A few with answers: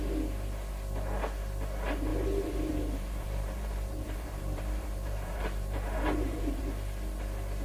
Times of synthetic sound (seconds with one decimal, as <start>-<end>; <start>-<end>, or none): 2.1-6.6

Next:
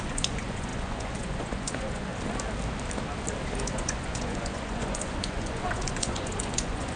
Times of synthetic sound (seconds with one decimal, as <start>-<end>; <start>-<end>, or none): 0.0-2.1; 3.6-7.0

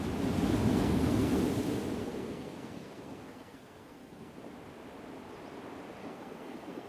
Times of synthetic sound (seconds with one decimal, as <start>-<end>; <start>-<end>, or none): 0.7-1.4; 2.0-4.3; 6.0-6.9

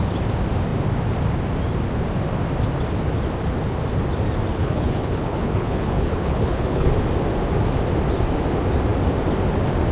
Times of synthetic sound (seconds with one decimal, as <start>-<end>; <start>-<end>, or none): 4.5-6.9